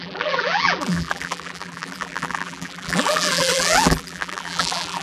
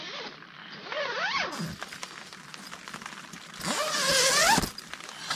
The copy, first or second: first